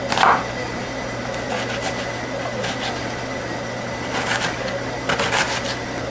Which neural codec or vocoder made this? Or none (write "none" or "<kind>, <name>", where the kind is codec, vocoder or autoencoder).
none